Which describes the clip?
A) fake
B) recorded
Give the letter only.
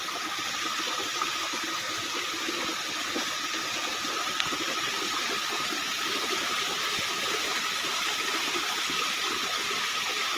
B